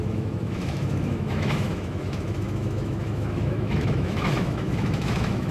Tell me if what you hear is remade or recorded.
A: remade